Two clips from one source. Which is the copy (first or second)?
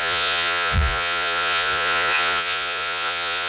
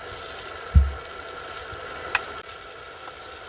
first